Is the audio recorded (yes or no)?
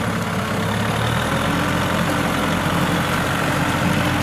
yes